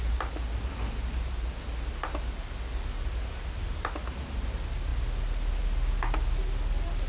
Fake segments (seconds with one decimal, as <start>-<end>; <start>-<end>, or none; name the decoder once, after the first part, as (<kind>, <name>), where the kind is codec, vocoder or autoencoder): none